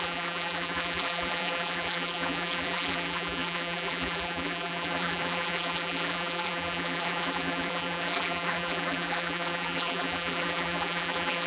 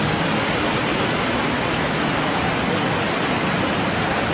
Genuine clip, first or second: second